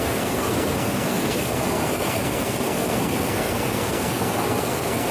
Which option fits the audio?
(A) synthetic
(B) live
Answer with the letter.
A